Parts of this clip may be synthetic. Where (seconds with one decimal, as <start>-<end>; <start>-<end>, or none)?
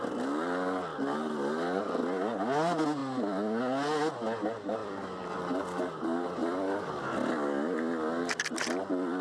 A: 0.9-1.8; 4.8-5.8; 6.4-7.0